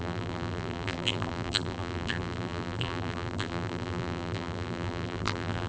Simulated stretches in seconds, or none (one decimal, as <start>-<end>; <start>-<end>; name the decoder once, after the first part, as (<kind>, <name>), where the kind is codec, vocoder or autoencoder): 0.0-5.7 (vocoder, BigVGAN v2)